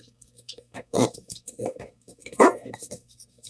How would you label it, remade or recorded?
remade